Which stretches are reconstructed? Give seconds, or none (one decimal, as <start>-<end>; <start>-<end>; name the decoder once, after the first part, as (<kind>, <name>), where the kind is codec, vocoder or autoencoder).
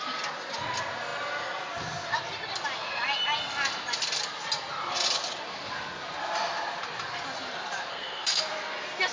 7.9-8.4 (codec, SNAC)